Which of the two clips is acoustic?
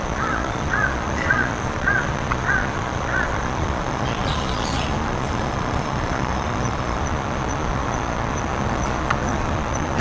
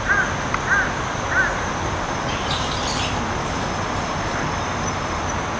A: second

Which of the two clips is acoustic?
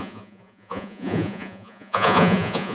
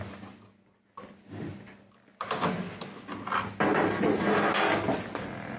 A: second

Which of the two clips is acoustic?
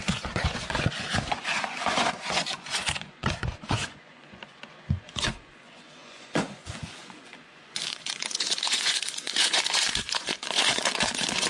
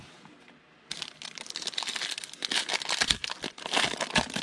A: second